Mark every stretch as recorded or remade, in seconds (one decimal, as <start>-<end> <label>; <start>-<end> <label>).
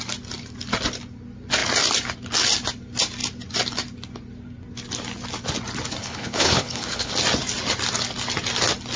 0.0-6.0 recorded; 6.0-7.1 remade; 7.1-9.0 recorded